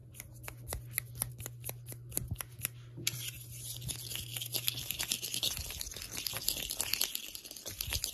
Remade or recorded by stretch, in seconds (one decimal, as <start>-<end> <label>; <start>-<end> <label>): 0.0-8.1 recorded